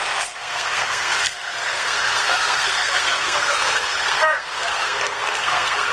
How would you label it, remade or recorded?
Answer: remade